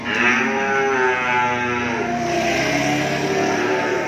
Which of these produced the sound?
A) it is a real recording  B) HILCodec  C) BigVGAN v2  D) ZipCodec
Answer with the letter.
A